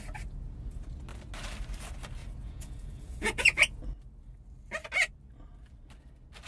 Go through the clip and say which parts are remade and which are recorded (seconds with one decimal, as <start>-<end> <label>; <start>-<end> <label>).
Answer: 0.0-2.2 recorded; 2.2-3.8 remade; 3.8-6.5 recorded